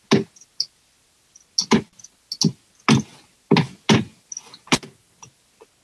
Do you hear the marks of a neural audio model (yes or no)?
no